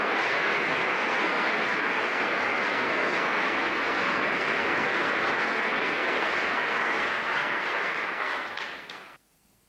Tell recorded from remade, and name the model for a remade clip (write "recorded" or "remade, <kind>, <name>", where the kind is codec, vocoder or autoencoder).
remade, codec, SNAC